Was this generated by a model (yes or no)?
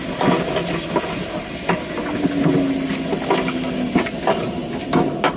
no